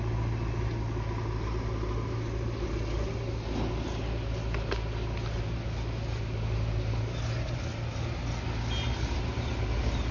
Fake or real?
real